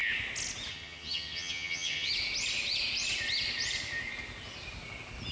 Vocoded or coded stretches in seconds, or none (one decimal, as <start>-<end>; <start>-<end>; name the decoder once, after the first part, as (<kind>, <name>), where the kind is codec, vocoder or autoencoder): 0.7-2.1 (vocoder, HiFi-GAN)